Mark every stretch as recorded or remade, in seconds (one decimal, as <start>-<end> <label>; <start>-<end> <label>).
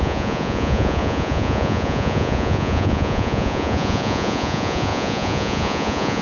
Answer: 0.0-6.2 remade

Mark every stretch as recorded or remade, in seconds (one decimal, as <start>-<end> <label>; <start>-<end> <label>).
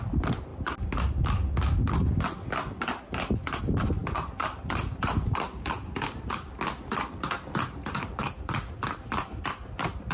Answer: 0.0-10.1 recorded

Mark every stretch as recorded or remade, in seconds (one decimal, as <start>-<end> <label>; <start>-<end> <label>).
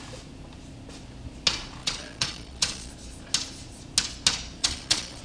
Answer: 0.0-1.8 recorded; 1.8-2.9 remade; 2.9-4.6 recorded; 4.6-5.2 remade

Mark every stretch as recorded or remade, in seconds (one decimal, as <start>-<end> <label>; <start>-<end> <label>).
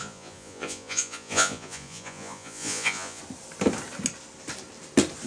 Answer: 0.0-3.2 remade; 3.2-5.3 recorded